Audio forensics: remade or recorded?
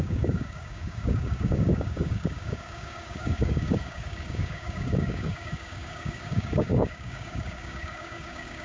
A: remade